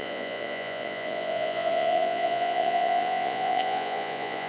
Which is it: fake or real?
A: fake